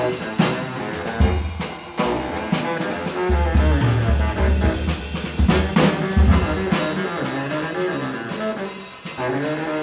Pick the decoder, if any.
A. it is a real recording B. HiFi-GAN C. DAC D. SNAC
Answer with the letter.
A